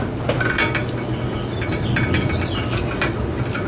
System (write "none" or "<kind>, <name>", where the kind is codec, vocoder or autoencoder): none